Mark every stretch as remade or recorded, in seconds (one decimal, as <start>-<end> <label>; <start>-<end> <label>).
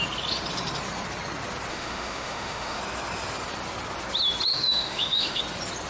0.0-1.7 recorded; 1.7-2.8 remade; 2.8-4.5 recorded; 4.5-5.4 remade; 5.4-5.9 recorded